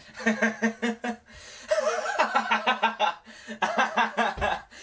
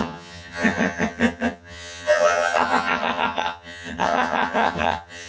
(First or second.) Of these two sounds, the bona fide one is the first